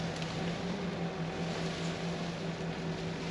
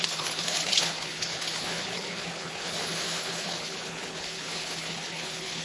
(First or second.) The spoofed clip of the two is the second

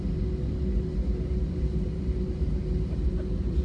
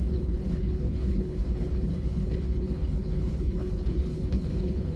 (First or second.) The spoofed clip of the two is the second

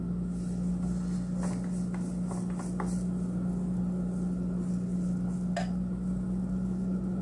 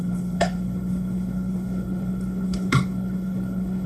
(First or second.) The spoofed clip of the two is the second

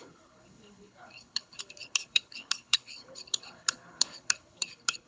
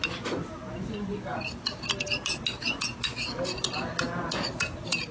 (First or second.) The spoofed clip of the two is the first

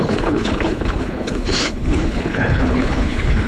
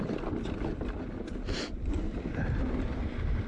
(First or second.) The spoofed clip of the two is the first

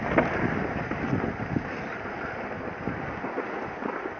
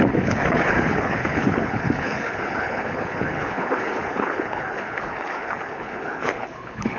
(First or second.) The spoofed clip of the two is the second